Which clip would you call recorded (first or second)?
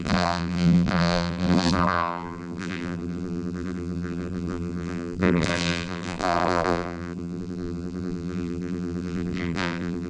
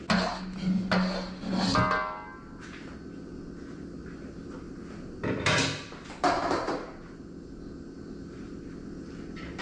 second